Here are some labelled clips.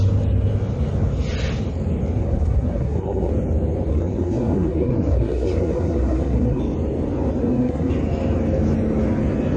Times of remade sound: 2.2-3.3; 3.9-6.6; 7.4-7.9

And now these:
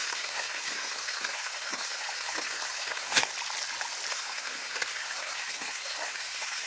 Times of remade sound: 0.0-3.3; 4.1-6.7

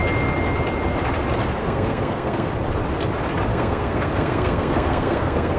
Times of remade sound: 1.6-2.5; 3.5-5.6